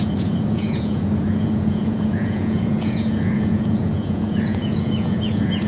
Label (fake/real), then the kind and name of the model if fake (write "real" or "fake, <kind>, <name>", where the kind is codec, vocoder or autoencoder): fake, vocoder, Vocos